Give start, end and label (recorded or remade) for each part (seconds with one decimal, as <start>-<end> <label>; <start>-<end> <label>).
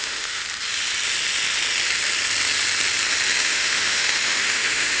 0.0-0.4 remade; 0.4-3.4 recorded; 3.4-5.0 remade